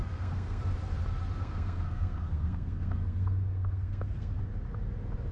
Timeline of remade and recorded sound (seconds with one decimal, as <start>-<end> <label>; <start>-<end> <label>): 0.0-0.6 remade; 0.6-1.4 recorded; 1.4-4.4 remade; 4.4-5.3 recorded